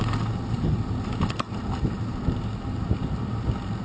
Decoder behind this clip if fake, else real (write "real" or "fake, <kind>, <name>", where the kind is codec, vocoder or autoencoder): real